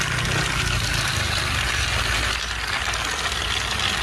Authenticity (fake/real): real